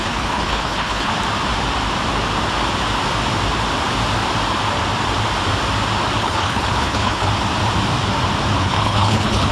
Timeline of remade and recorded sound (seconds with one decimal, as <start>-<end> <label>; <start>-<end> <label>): 0.0-1.1 remade; 1.1-6.2 recorded; 6.2-7.3 remade; 7.3-8.6 recorded; 8.6-9.5 remade